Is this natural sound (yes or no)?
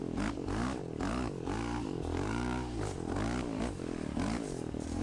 no